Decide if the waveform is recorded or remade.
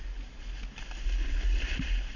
recorded